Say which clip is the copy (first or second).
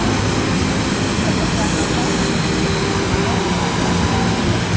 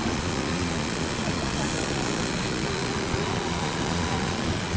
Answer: second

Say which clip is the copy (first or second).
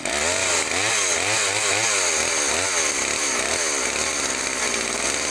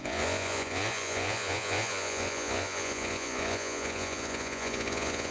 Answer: second